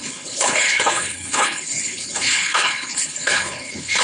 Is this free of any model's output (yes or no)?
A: no